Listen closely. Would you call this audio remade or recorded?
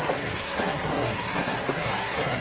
remade